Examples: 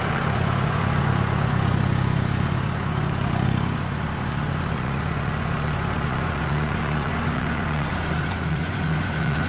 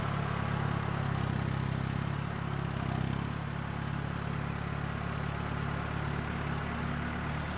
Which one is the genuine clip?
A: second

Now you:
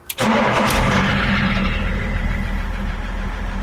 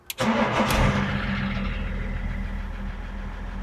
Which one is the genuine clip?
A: second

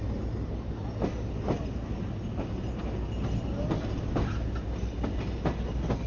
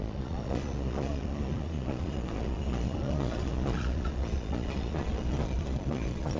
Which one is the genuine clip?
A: first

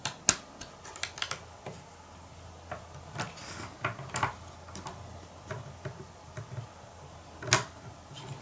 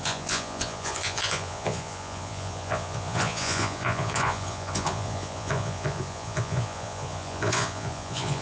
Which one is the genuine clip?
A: first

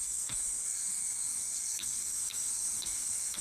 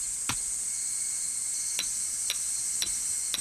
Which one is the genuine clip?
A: second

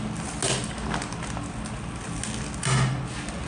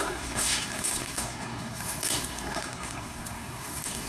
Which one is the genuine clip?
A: first